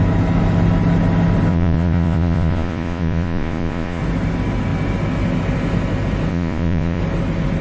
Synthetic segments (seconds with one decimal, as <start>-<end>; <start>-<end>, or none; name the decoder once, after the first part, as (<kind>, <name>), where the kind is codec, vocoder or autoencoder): 1.5-4.0 (vocoder, Vocos); 6.3-7.0